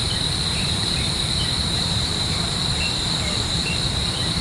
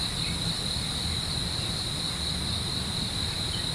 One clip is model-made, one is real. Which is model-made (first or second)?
first